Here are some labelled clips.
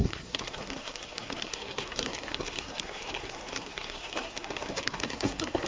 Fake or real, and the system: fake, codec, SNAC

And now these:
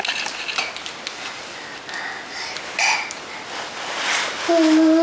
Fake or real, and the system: real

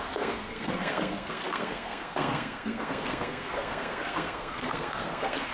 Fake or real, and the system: fake, codec, SNAC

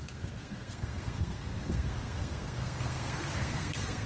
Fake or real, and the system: fake, codec, SNAC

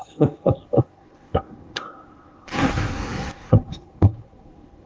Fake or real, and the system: fake, codec, SNAC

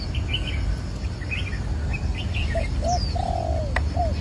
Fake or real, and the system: real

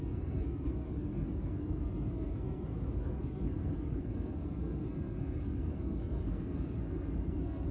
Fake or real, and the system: fake, codec, SNAC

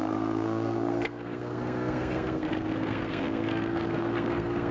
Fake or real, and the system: fake, codec, SNAC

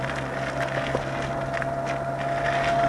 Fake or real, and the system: real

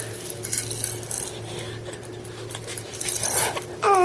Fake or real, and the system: real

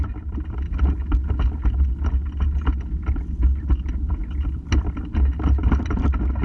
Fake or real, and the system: real